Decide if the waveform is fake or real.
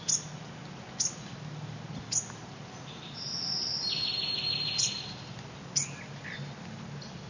real